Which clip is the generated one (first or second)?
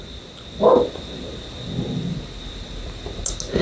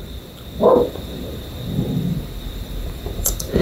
second